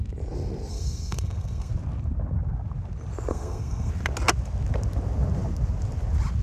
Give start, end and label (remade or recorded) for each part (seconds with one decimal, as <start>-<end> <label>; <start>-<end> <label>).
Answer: 0.0-0.7 recorded; 0.7-1.7 remade; 1.7-3.3 recorded; 3.3-3.9 remade; 3.9-6.4 recorded